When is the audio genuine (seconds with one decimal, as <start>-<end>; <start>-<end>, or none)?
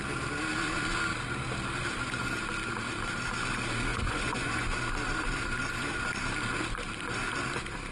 0.0-3.9; 4.7-7.9